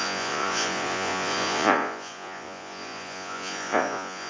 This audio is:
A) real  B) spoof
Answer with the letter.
B